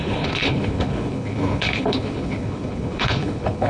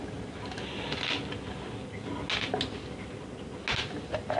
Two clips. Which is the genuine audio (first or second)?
second